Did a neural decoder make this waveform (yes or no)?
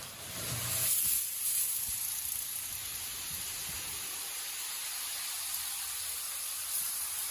no